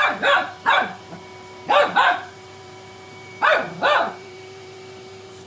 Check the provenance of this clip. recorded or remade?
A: remade